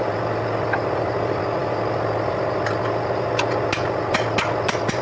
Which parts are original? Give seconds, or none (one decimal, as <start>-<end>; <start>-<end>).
0.0-5.0